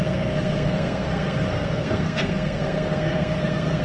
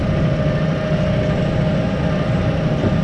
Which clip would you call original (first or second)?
second